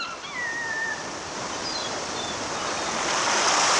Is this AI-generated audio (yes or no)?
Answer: no